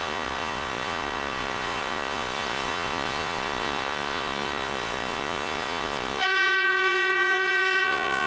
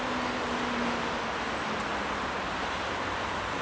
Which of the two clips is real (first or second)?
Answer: second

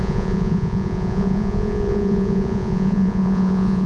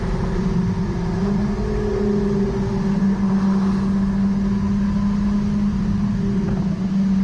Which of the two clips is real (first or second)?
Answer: second